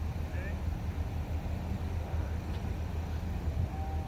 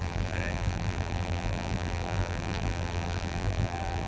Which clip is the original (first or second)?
first